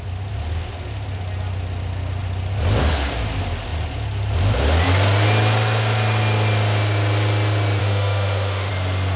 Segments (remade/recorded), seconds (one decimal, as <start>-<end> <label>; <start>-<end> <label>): 0.0-7.8 recorded; 7.8-8.7 remade; 8.7-9.2 recorded